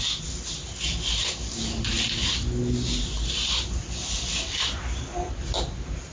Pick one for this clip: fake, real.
real